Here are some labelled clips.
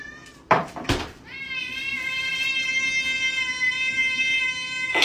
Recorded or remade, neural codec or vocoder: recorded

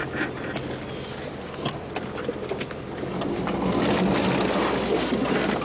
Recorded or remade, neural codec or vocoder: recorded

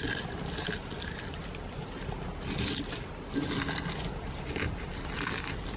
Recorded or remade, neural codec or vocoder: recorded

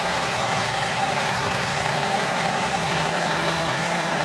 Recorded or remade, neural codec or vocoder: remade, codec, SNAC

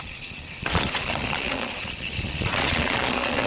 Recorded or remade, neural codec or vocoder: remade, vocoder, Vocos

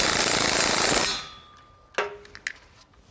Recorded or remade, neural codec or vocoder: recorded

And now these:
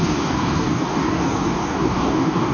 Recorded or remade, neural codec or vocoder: remade, codec, DAC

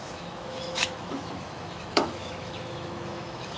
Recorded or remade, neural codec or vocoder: remade, autoencoder, DAC-VAE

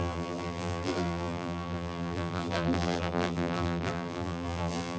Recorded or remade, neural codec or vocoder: remade, vocoder, BigVGAN v2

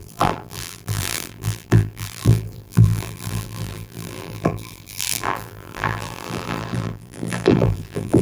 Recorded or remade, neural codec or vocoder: remade, vocoder, BigVGAN v2